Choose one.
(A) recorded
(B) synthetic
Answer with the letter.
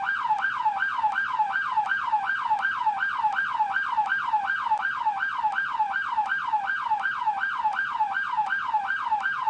A